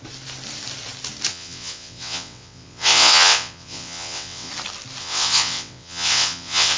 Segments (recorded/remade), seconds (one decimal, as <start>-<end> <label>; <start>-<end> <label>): 0.0-1.3 recorded; 1.3-4.5 remade; 4.5-5.0 recorded; 5.0-6.8 remade